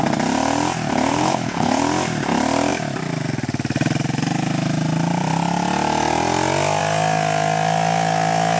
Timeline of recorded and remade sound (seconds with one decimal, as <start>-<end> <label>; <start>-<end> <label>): 0.0-1.1 recorded; 1.1-1.8 remade; 1.8-8.6 recorded